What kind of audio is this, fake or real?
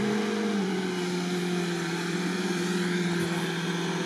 fake